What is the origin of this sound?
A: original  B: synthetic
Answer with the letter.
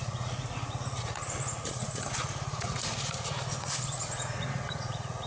B